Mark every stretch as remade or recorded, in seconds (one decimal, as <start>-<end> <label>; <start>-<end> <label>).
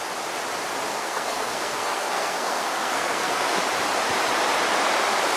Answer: 0.0-0.9 recorded; 0.9-3.6 remade; 3.6-5.4 recorded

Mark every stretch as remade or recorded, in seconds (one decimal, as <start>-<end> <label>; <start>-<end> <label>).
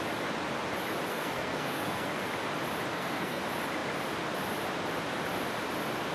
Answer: 0.0-1.1 recorded; 1.1-2.3 remade; 2.3-2.9 recorded; 2.9-3.4 remade; 3.4-6.1 recorded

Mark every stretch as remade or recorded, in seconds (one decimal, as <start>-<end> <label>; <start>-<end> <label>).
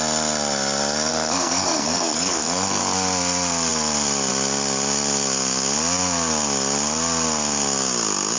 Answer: 0.0-1.1 recorded; 1.1-2.8 remade; 2.8-8.4 recorded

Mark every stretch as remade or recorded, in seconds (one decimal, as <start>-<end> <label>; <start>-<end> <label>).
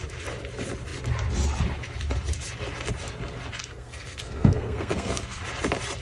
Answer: 0.0-3.6 recorded; 3.6-5.4 remade; 5.4-6.0 recorded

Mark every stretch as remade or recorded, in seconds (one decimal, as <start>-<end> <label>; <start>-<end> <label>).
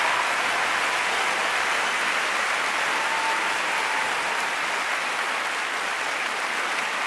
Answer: 0.0-7.1 recorded